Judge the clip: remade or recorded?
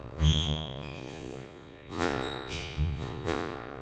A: remade